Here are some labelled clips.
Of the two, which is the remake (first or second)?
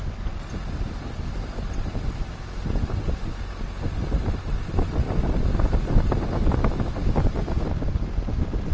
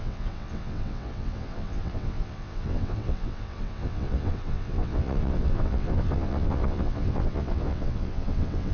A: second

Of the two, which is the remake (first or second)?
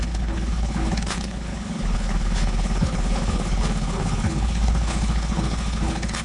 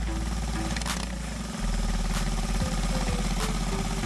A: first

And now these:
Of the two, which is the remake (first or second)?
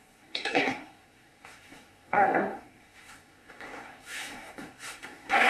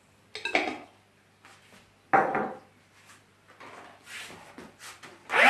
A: first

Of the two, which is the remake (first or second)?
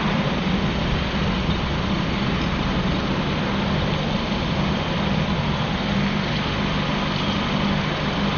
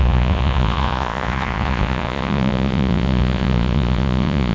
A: second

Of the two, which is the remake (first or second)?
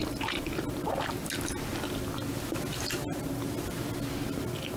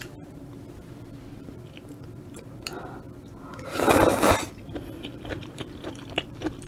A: second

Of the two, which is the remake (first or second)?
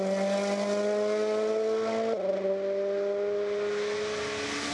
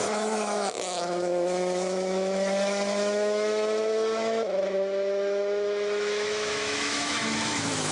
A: second